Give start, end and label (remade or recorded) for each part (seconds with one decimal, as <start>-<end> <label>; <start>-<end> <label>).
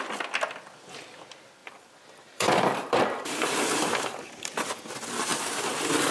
0.0-1.6 recorded; 1.6-4.7 remade; 4.7-6.1 recorded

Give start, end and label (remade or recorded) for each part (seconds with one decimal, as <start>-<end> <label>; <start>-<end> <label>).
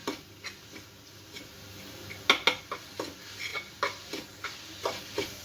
0.0-2.6 recorded; 2.6-3.5 remade; 3.5-5.0 recorded; 5.0-5.4 remade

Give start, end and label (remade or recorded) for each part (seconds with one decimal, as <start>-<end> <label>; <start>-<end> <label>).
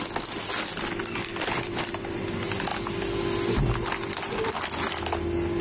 0.0-1.3 recorded; 1.3-2.0 remade; 2.0-5.6 recorded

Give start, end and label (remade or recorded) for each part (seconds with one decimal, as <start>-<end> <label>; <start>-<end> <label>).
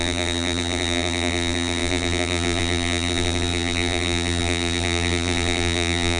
0.0-6.2 remade